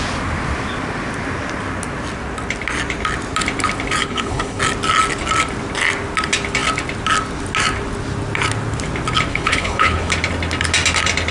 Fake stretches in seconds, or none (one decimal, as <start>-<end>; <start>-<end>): 4.0-4.6; 9.3-10.1